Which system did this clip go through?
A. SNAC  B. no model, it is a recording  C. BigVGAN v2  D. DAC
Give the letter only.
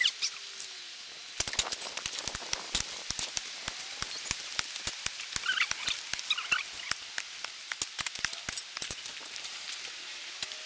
B